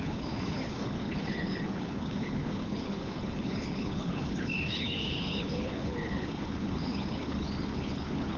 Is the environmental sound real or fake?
fake